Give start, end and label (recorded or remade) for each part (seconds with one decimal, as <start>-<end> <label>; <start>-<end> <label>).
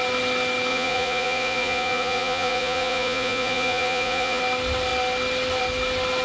0.0-0.7 recorded; 0.7-4.4 remade; 4.4-6.2 recorded